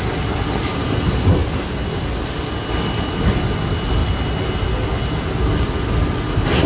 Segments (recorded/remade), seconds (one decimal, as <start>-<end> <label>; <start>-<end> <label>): 0.0-6.7 recorded